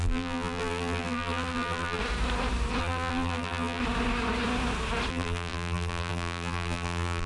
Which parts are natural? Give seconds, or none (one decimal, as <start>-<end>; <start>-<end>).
2.0-2.8; 3.8-5.1